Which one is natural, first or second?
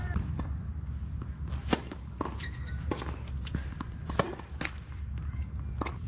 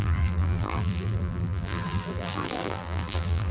first